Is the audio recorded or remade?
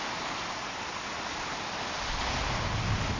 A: recorded